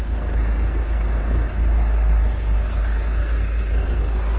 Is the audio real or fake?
fake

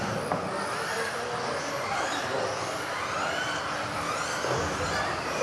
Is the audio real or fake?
real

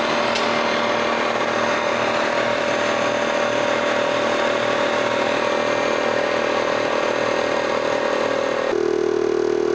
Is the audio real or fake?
real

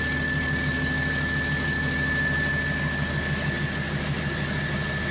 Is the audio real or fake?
real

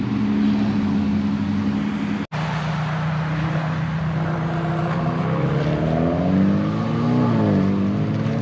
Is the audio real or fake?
real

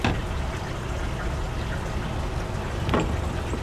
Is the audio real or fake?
real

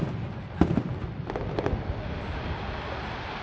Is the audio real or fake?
real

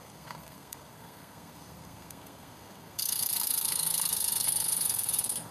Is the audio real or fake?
fake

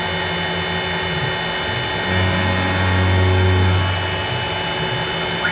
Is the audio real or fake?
real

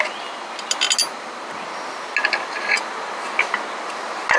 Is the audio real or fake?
real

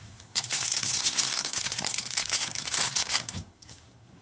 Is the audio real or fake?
fake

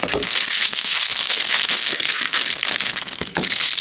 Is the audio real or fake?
fake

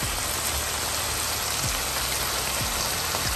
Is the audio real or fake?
real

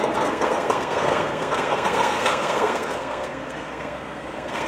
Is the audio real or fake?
fake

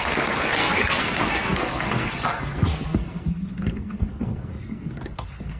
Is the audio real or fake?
fake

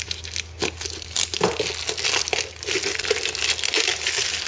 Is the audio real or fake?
real